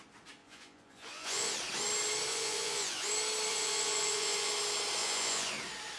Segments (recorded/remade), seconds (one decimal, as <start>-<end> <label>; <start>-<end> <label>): 0.0-0.4 recorded; 0.4-1.5 remade; 1.5-2.3 recorded; 2.3-3.1 remade; 3.1-3.5 recorded; 3.5-4.5 remade; 4.5-5.0 recorded; 5.0-5.5 remade; 5.5-6.0 recorded